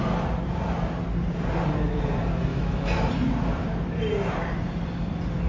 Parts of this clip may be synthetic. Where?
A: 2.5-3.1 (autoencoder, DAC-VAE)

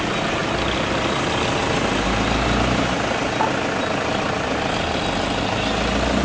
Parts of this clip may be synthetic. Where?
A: none

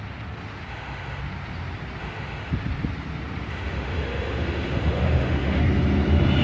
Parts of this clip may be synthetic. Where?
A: 0.7-1.2 (autoencoder, DAC-VAE); 2.0-2.5; 3.5-5.6

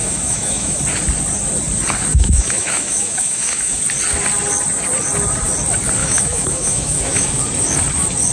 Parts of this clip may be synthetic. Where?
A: 0.0-0.8 (autoencoder, DAC-VAE); 2.1-3.8; 6.0-7.4

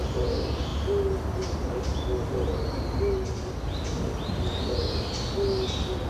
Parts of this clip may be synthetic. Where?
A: none